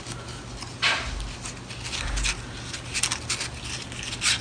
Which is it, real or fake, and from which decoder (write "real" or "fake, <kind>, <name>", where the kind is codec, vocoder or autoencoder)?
real